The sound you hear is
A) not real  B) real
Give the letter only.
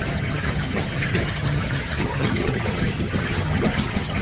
A